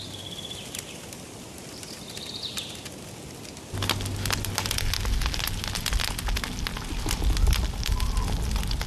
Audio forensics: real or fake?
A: real